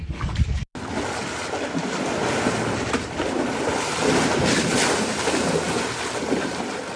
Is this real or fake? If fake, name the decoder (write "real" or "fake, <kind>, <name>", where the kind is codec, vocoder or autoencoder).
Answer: real